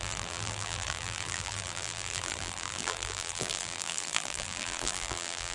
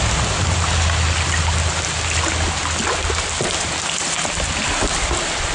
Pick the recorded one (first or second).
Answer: second